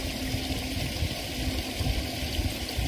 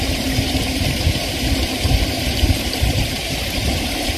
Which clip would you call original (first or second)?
first